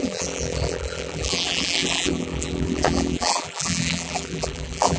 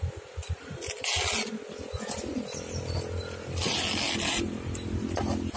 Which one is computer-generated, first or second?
first